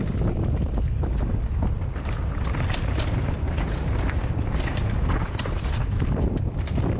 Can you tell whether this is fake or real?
real